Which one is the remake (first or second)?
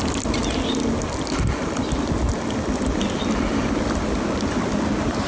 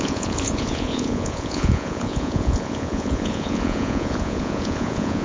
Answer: second